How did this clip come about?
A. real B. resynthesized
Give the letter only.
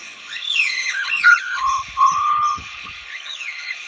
B